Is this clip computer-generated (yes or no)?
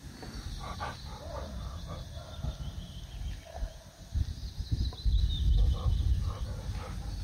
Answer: no